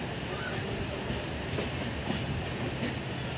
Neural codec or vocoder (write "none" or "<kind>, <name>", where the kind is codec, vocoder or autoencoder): none